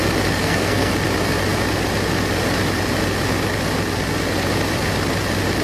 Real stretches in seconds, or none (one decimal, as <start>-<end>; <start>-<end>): 0.0-0.4; 0.9-5.6